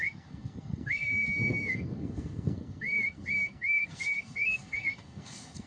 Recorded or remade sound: remade